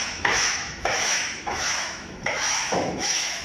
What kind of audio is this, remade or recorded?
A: remade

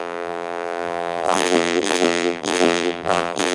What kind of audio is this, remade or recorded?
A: remade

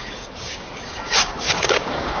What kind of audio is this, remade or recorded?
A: remade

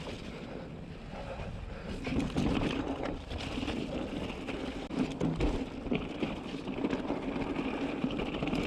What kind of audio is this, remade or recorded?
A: recorded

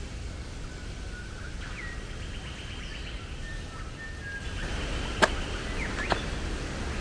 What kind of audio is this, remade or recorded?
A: recorded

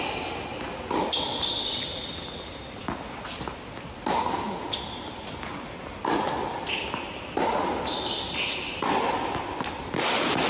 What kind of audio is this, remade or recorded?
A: recorded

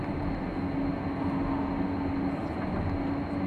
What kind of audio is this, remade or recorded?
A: recorded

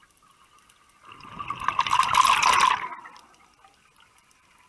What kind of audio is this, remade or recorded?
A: recorded